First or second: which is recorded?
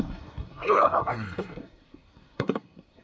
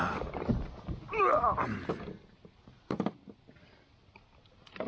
second